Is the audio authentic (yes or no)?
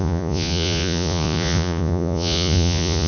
no